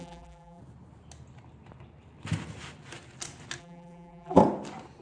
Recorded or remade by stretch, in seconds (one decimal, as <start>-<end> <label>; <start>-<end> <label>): 0.0-0.6 remade; 0.6-3.6 recorded; 3.6-4.4 remade; 4.4-5.0 recorded